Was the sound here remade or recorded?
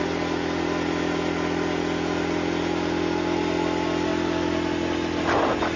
recorded